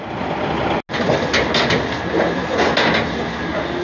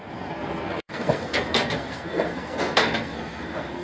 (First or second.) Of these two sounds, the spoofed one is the second